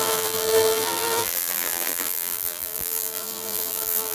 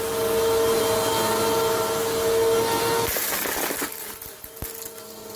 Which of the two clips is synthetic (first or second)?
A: first